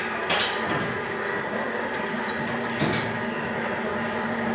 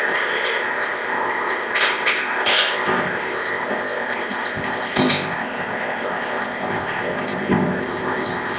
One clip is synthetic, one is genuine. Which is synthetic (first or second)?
second